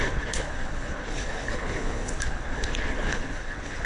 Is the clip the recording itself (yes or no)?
no